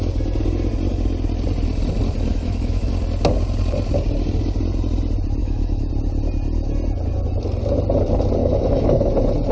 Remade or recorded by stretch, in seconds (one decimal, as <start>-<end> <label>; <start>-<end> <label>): 0.0-2.3 recorded; 2.3-2.9 remade; 2.9-5.4 recorded; 5.4-5.9 remade; 5.9-8.4 recorded; 8.4-9.1 remade; 9.1-9.5 recorded